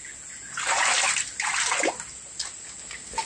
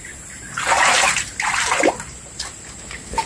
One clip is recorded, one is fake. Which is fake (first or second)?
second